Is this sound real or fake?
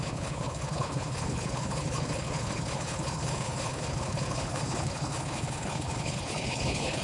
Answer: fake